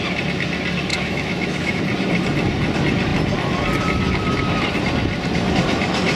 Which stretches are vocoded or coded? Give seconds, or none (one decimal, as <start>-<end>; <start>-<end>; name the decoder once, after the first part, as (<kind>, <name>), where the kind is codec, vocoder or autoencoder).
0.9-1.8 (autoencoder, DAC-VAE)

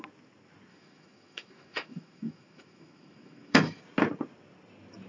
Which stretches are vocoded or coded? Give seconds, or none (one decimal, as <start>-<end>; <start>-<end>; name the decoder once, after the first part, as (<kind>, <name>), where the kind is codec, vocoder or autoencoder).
0.7-3.8 (autoencoder, DAC-VAE)

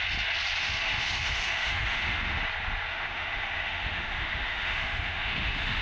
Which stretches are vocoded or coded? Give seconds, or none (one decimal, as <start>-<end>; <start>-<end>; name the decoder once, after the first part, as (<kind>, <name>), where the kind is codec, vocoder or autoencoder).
0.6-2.4 (autoencoder, DAC-VAE); 2.9-5.8

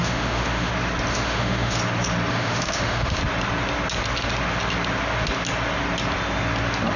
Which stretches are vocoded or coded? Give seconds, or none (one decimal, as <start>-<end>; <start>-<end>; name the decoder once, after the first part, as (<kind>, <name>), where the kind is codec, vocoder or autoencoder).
0.0-0.7 (autoencoder, DAC-VAE); 1.1-1.8; 2.3-3.2

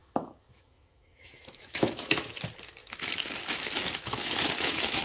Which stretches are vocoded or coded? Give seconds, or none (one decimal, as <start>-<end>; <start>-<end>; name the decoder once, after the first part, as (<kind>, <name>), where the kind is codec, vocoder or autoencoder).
0.0-2.4 (autoencoder, DAC-VAE); 2.8-5.0